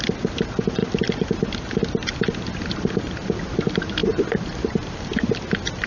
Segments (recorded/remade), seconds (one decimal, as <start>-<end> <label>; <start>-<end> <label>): 0.0-5.9 recorded